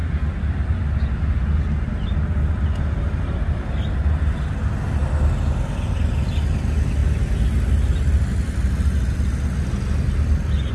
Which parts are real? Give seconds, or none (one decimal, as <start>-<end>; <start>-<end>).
0.0-10.7